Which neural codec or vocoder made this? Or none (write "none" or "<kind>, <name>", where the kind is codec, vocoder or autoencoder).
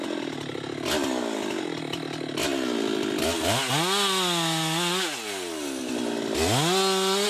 none